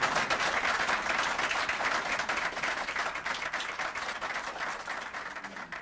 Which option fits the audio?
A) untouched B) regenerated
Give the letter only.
A